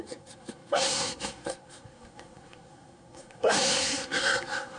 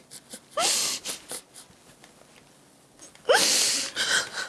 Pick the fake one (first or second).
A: first